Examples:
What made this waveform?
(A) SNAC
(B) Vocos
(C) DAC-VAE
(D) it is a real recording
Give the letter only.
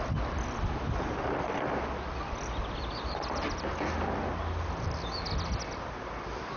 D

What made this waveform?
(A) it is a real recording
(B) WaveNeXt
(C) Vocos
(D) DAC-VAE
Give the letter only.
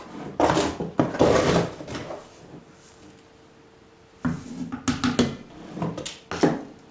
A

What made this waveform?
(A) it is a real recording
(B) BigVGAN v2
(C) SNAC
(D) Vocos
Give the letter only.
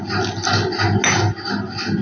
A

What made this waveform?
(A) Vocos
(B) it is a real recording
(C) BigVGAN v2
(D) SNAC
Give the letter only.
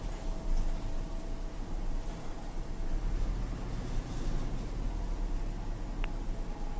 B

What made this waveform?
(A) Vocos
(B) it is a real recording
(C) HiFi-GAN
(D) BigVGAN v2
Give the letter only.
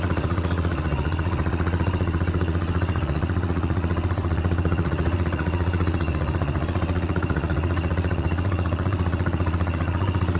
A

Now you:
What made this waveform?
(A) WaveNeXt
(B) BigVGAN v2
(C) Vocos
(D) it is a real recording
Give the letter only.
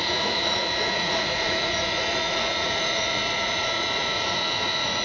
C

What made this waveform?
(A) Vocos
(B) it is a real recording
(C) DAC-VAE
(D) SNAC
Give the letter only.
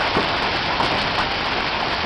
B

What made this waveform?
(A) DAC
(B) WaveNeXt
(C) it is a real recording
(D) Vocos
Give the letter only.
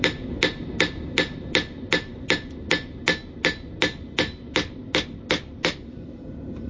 C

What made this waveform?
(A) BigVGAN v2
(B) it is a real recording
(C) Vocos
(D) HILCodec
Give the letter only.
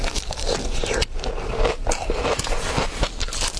B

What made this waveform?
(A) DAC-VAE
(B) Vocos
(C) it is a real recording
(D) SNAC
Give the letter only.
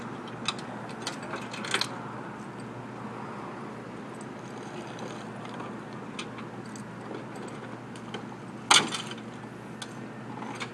C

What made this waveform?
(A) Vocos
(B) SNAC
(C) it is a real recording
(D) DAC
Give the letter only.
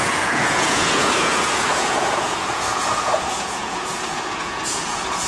A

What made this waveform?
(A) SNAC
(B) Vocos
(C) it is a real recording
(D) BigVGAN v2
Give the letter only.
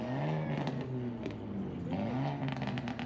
C